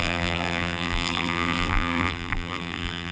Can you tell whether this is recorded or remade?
remade